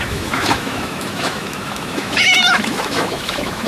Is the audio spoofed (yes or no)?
yes